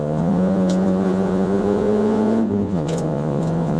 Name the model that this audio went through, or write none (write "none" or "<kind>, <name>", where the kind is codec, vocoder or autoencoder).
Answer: vocoder, Vocos